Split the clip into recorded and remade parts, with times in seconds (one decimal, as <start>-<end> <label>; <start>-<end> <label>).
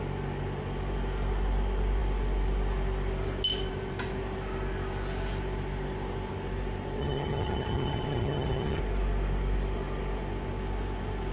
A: 0.0-7.0 recorded; 7.0-8.8 remade; 8.8-11.3 recorded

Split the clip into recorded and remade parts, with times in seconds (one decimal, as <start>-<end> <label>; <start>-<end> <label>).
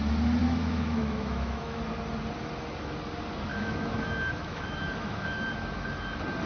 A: 0.0-0.4 recorded; 0.4-1.8 remade; 1.8-3.5 recorded; 3.5-5.4 remade; 5.4-6.5 recorded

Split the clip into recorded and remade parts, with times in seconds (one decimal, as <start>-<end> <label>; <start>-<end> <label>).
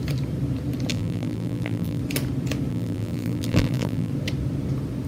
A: 0.0-0.9 recorded; 0.9-2.0 remade; 2.0-2.7 recorded; 2.7-4.1 remade; 4.1-5.1 recorded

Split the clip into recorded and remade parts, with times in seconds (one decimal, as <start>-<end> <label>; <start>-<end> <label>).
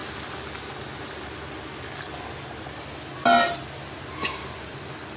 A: 0.0-5.2 recorded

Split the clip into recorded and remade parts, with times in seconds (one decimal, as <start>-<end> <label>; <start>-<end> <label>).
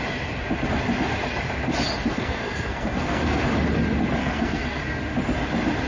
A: 0.0-2.1 recorded; 2.1-3.4 remade; 3.4-4.2 recorded; 4.2-4.8 remade; 4.8-5.9 recorded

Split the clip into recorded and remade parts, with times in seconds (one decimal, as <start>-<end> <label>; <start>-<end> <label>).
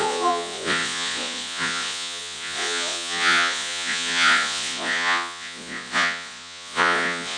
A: 0.0-7.4 remade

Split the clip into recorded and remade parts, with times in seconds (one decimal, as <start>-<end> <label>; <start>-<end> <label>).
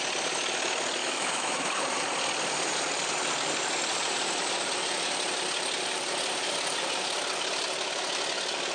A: 0.0-1.0 recorded; 1.0-1.8 remade; 1.8-8.7 recorded